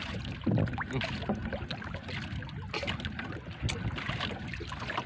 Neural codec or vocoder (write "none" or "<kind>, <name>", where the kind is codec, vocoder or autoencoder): none